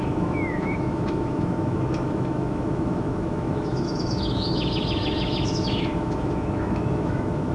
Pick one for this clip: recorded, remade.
remade